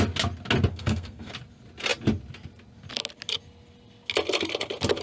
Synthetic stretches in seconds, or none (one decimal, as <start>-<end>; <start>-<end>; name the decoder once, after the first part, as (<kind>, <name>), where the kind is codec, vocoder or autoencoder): 0.7-1.3 (codec, SNAC)